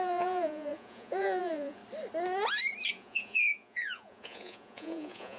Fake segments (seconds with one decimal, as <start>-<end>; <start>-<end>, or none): 0.0-1.8; 2.9-5.4